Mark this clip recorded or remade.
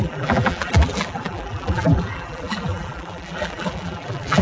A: remade